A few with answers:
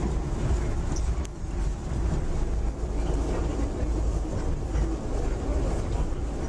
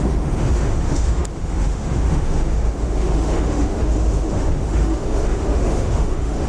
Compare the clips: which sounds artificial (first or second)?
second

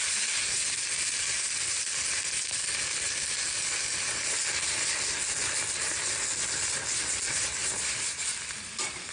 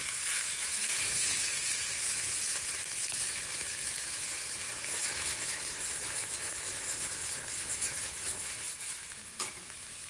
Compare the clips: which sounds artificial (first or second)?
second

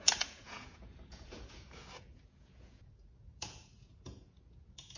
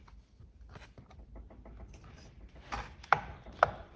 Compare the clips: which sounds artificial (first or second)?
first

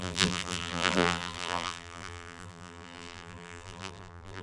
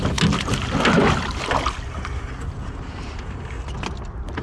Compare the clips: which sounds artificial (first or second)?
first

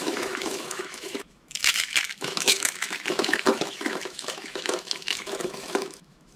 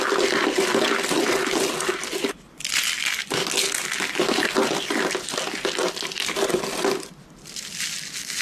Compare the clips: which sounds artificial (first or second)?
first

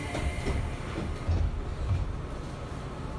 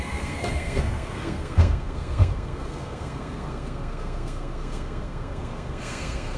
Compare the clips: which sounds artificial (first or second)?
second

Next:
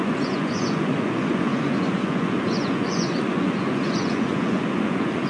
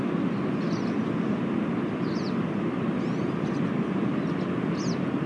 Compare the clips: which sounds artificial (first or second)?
first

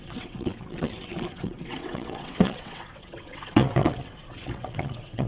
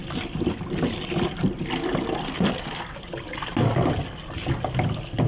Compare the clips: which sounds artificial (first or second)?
first